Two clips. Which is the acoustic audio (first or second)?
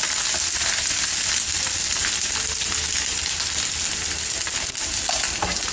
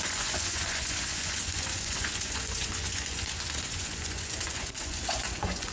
first